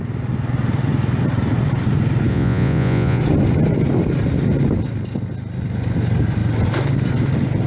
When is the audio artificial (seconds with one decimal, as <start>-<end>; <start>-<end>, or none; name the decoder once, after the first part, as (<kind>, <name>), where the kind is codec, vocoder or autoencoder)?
2.3-3.2 (vocoder, Vocos)